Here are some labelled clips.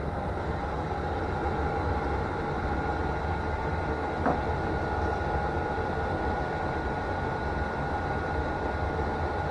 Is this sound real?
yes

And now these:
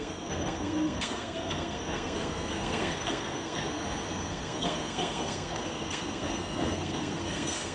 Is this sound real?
no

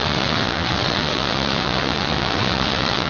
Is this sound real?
no